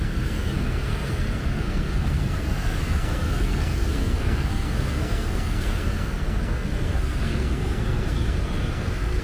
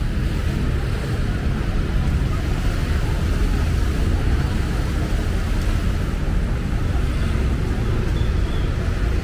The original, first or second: second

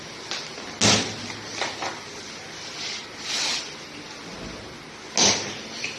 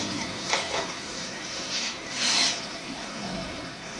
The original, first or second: first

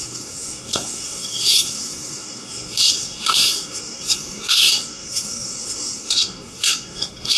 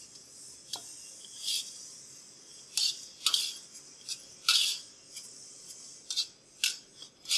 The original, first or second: second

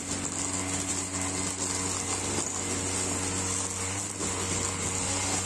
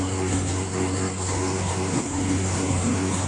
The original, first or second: first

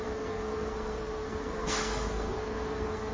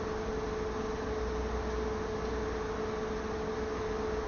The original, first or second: second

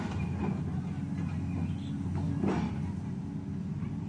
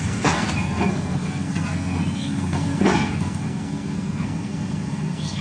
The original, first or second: first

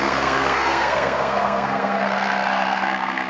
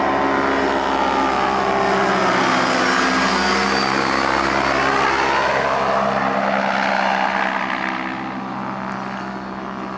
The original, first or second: second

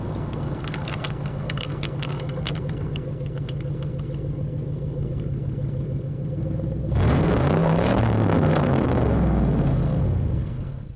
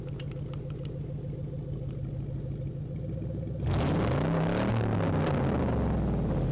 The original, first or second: second